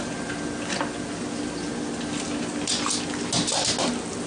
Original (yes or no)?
yes